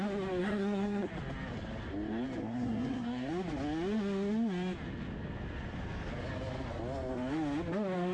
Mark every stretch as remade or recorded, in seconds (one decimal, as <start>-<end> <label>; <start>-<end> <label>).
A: 0.0-0.4 recorded; 0.4-1.1 remade; 1.1-2.4 recorded; 2.4-3.3 remade; 3.3-8.1 recorded